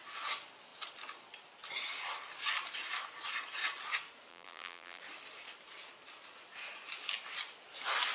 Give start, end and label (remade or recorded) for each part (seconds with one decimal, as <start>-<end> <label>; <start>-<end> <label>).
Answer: 0.0-4.3 recorded; 4.3-5.0 remade; 5.0-8.1 recorded